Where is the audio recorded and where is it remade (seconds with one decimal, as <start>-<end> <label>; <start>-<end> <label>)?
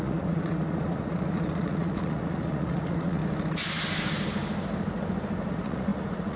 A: 0.0-3.2 remade; 3.2-5.5 recorded; 5.5-6.4 remade